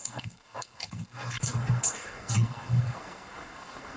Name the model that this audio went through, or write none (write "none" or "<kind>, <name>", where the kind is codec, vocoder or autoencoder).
codec, SNAC